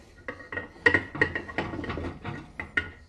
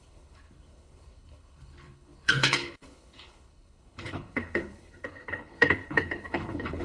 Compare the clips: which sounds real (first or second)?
first